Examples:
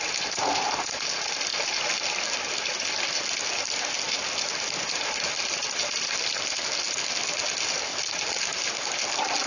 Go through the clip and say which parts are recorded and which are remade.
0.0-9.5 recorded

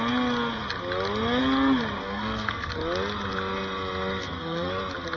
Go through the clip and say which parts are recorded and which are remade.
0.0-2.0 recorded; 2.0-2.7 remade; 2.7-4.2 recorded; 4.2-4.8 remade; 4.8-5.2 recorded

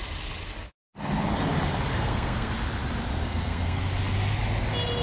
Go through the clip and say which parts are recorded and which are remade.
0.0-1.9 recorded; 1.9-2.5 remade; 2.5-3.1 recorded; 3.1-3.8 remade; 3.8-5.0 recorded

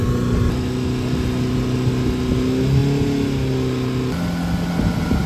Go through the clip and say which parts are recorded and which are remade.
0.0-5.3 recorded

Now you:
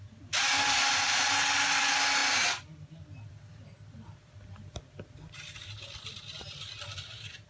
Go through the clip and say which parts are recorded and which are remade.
0.0-7.5 recorded